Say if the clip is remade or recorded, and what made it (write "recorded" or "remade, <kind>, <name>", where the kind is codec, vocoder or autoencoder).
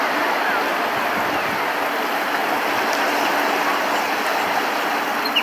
recorded